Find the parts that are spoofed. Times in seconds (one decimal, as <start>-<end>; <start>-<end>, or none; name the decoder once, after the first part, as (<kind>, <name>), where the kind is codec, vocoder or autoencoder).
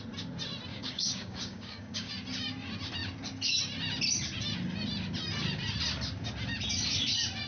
0.7-2.1 (codec, DAC)